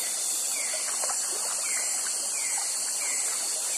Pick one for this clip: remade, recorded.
recorded